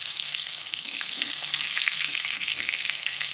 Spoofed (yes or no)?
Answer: yes